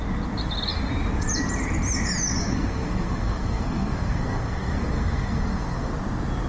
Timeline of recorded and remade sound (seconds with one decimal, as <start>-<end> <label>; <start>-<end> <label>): 0.0-2.4 recorded; 2.4-5.9 remade; 5.9-6.5 recorded